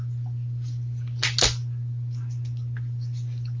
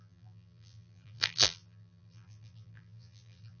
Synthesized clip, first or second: second